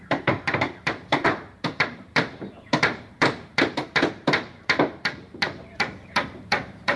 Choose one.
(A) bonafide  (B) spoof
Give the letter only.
B